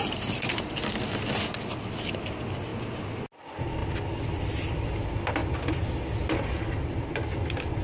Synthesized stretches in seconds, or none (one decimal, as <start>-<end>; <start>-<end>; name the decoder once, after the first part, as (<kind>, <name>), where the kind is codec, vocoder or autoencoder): none